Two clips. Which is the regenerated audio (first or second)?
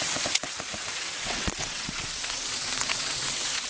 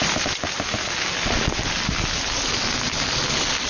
first